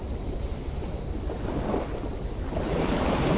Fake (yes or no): no